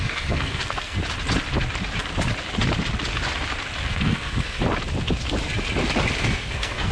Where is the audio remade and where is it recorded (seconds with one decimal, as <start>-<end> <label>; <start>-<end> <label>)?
0.0-1.0 remade; 1.0-3.9 recorded; 3.9-4.6 remade; 4.6-6.2 recorded; 6.2-6.9 remade